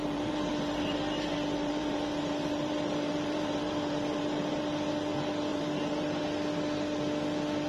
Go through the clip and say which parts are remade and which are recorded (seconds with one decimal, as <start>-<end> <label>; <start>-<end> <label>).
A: 0.0-4.6 remade; 4.6-5.5 recorded; 5.5-6.2 remade; 6.2-7.7 recorded